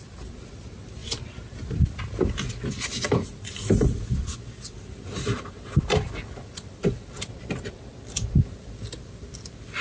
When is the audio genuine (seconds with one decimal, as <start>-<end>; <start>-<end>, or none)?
0.0-9.8